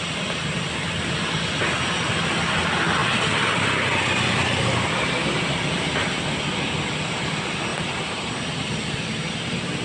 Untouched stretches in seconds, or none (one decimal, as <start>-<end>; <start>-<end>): 0.0-7.7; 8.3-9.8